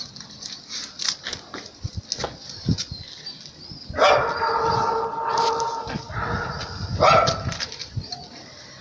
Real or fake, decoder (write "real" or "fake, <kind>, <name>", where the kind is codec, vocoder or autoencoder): real